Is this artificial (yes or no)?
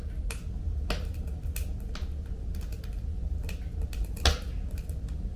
no